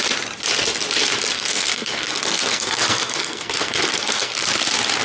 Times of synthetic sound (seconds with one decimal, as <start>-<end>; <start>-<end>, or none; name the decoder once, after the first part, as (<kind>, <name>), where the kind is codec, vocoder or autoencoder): 1.3-4.3 (codec, SNAC)